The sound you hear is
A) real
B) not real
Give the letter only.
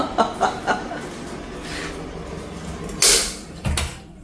A